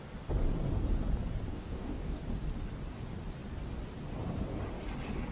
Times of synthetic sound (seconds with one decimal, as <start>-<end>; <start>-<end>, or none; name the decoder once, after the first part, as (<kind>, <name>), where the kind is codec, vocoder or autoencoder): 1.5-2.2 (codec, DAC)